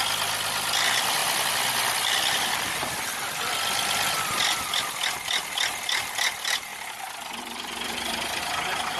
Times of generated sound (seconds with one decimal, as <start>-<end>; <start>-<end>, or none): 1.2-5.4; 6.7-8.4